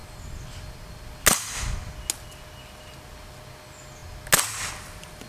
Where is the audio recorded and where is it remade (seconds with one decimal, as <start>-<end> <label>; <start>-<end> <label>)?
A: 0.0-5.3 recorded